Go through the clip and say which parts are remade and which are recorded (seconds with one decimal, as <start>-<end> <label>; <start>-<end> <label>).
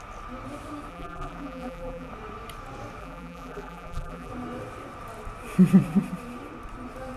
0.0-0.9 recorded; 0.9-2.1 remade; 2.1-3.0 recorded; 3.0-4.3 remade; 4.3-7.2 recorded